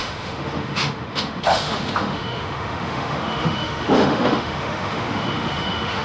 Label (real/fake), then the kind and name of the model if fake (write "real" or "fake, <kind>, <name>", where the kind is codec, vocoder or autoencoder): fake, autoencoder, DAC-VAE